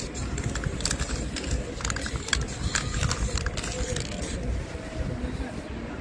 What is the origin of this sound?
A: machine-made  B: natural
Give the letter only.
B